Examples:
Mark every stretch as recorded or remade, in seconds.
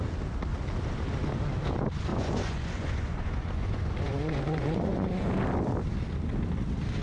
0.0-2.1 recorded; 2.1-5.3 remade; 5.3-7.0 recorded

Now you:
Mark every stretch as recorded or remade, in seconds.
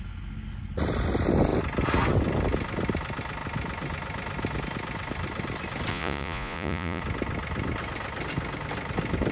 0.0-5.9 recorded; 5.9-7.0 remade; 7.0-9.3 recorded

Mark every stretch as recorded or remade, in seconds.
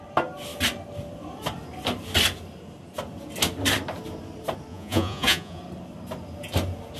0.0-4.7 recorded; 4.7-5.6 remade; 5.6-7.0 recorded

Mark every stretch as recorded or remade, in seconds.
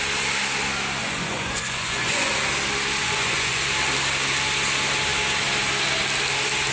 0.0-1.0 recorded; 1.0-2.3 remade; 2.3-3.0 recorded; 3.0-3.6 remade; 3.6-6.7 recorded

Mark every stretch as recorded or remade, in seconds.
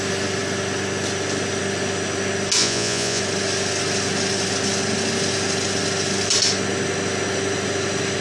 0.0-2.6 recorded; 2.6-3.2 remade; 3.2-8.2 recorded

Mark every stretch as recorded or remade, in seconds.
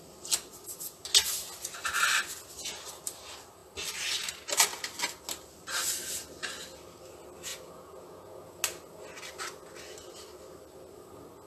0.0-7.5 recorded; 7.5-8.6 remade; 8.6-11.5 recorded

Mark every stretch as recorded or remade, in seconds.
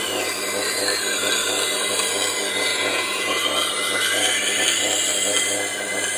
0.0-2.7 recorded; 2.7-3.4 remade; 3.4-6.2 recorded